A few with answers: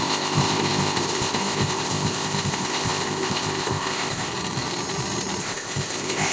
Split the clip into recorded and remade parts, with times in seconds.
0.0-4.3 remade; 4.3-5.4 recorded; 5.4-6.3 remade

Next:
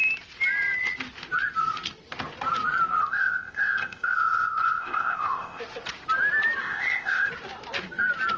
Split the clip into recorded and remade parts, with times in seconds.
0.0-3.0 recorded; 3.0-5.6 remade; 5.6-6.6 recorded; 6.6-7.3 remade; 7.3-8.4 recorded